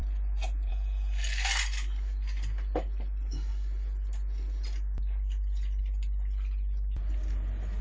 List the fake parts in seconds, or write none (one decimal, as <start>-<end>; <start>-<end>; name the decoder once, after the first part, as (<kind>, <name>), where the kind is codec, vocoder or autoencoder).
none